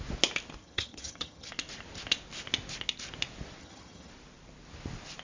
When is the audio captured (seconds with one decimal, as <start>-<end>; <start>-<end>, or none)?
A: 0.0-0.6; 1.5-3.6; 4.1-5.2